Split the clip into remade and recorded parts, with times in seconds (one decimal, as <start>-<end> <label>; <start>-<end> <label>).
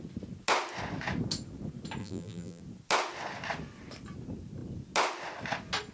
0.0-2.0 recorded; 2.0-2.6 remade; 2.6-5.9 recorded